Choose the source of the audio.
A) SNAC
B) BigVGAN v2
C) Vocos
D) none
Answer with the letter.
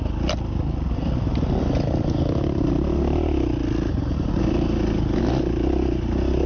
D